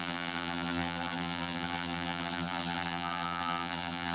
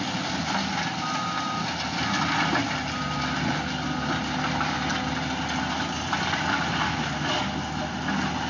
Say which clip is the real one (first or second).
second